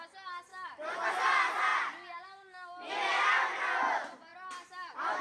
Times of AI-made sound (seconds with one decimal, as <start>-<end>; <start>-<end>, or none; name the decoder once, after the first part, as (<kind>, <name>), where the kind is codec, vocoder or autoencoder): none